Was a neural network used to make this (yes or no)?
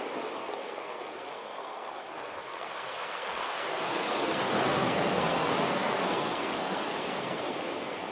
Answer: yes